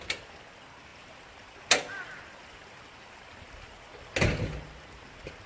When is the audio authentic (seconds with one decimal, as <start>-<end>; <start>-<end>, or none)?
0.0-5.5